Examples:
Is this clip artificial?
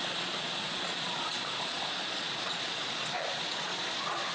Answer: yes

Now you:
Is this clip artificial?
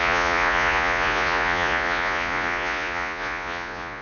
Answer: yes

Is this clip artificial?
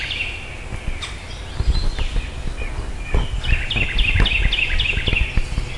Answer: no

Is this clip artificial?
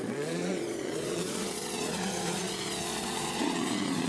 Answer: yes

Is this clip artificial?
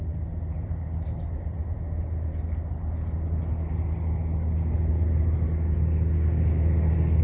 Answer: no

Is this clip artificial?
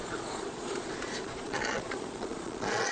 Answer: yes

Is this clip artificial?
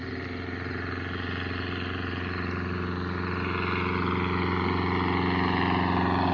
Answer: no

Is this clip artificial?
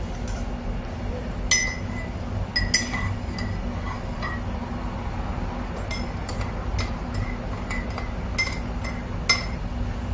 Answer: no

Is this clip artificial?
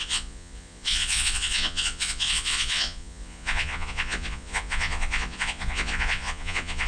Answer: yes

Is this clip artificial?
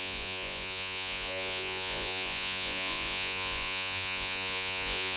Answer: yes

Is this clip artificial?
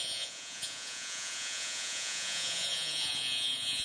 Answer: yes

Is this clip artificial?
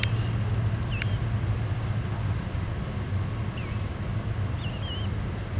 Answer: no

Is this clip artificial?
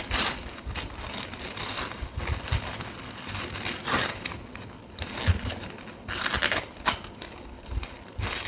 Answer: no